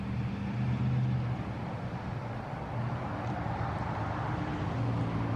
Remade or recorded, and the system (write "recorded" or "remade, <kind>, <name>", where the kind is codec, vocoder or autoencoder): recorded